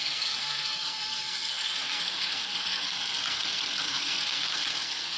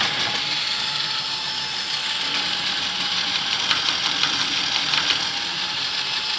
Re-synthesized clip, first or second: first